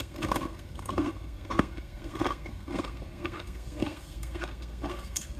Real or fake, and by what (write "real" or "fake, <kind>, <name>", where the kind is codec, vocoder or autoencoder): fake, codec, SNAC